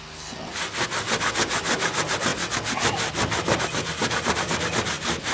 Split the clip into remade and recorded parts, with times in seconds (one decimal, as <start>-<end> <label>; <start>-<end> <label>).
0.0-4.0 recorded; 4.0-5.3 remade

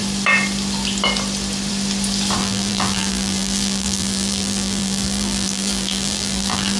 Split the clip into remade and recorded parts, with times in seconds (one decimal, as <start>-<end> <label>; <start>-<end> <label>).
0.0-2.4 recorded; 2.4-6.8 remade

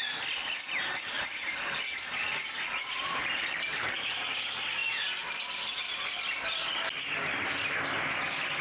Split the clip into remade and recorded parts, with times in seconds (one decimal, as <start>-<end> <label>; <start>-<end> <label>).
0.0-0.4 recorded; 0.4-4.1 remade; 4.1-8.6 recorded

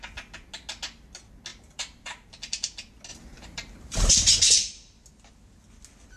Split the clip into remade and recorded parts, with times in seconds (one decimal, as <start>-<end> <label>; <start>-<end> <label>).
0.0-1.5 recorded; 1.5-2.3 remade; 2.3-3.1 recorded; 3.1-4.1 remade; 4.1-6.2 recorded

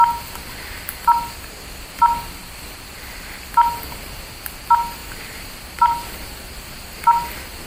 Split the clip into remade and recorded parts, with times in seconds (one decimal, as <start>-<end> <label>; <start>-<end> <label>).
0.0-5.0 recorded; 5.0-7.3 remade; 7.3-7.7 recorded

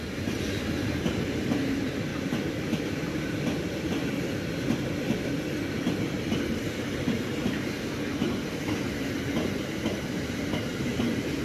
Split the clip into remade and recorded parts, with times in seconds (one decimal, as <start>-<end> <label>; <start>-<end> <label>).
0.0-2.1 remade; 2.1-2.8 recorded; 2.8-4.0 remade; 4.0-7.3 recorded; 7.3-11.4 remade

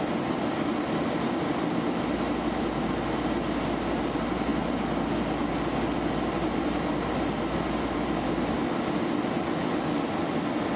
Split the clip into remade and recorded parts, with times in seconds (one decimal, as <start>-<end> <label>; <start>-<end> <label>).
0.0-10.8 recorded

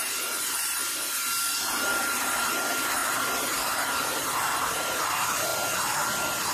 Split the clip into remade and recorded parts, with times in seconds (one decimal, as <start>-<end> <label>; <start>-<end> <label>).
0.0-5.5 remade; 5.5-6.5 recorded